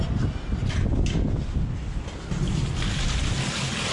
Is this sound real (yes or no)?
yes